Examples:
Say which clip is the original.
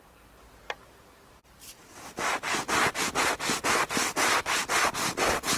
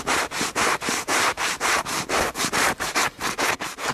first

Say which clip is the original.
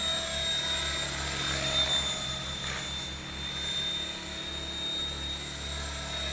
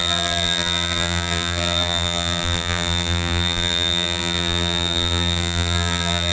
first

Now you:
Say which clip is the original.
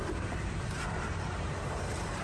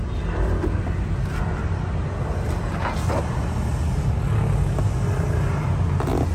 second